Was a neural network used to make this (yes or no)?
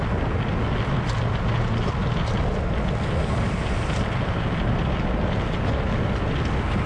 no